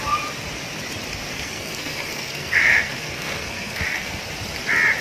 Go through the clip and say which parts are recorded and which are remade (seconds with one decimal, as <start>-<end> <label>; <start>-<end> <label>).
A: 0.0-1.3 recorded; 1.3-4.2 remade; 4.2-5.0 recorded